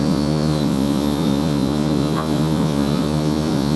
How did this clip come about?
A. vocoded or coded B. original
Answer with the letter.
A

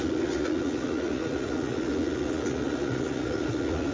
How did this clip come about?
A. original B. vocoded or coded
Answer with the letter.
B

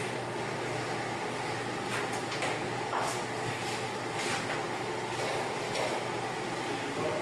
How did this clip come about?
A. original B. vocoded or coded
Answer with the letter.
A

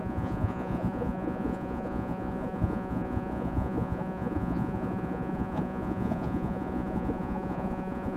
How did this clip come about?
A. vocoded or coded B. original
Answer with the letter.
A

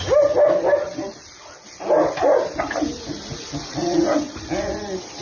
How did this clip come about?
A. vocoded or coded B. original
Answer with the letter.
B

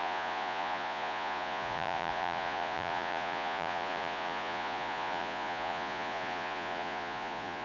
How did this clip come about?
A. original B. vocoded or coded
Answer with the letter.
B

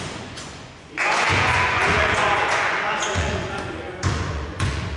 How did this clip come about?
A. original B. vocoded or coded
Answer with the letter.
B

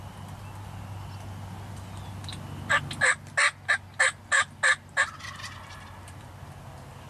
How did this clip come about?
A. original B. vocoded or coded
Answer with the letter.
A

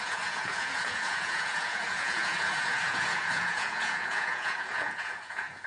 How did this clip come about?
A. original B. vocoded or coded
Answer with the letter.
B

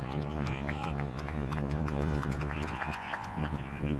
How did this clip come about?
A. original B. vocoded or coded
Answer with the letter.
B